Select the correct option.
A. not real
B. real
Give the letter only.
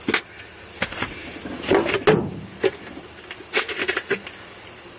B